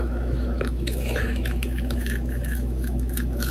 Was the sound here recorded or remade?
remade